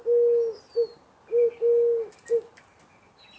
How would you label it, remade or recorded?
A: recorded